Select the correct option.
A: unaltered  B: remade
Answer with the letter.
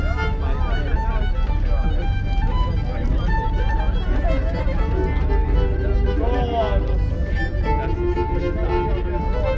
A